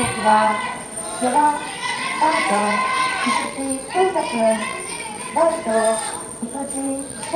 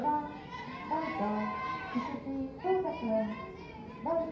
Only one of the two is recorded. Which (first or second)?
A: second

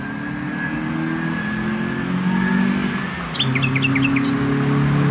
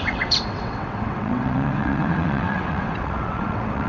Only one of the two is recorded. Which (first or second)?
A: first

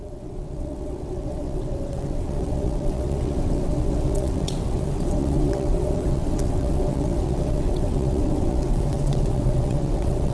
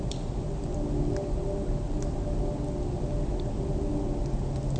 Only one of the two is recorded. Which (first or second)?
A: second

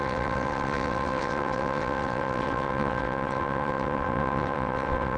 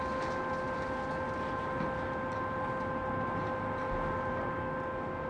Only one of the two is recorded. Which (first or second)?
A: second